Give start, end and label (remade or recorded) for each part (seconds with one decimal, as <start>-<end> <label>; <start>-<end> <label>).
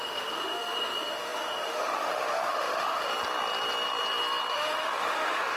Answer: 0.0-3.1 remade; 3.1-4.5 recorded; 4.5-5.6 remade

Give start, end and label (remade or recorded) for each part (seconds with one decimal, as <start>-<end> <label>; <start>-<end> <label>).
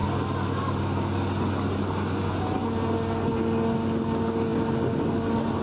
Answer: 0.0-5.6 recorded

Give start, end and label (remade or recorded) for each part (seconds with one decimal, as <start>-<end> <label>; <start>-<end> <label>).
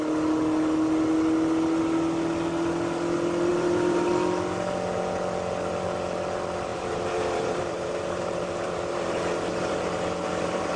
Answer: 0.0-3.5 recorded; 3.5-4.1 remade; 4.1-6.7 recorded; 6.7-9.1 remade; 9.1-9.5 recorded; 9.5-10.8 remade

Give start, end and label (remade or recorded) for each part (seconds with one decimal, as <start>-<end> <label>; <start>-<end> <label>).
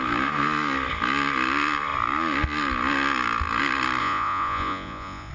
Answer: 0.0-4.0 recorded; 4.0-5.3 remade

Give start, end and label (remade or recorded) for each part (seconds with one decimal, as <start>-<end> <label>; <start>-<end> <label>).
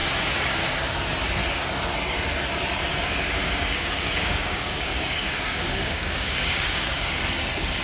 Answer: 0.0-3.4 recorded; 3.4-7.2 remade; 7.2-7.8 recorded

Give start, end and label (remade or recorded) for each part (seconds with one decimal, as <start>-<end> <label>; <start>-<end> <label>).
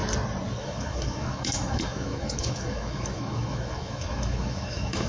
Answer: 0.0-0.6 recorded; 0.6-5.1 remade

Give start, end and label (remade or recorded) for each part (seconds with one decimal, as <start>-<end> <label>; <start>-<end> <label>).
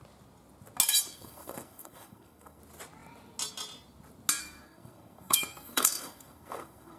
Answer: 0.0-1.1 recorded; 1.1-2.6 remade; 2.6-4.4 recorded; 4.4-7.0 remade